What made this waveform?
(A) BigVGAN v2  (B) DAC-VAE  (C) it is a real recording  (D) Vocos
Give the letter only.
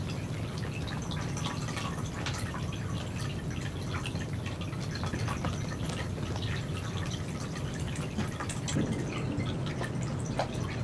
C